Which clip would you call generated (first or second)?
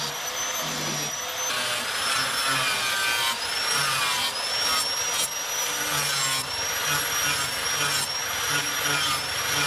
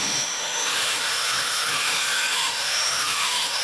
second